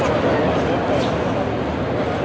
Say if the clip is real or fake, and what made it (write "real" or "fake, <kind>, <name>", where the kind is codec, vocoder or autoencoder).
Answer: real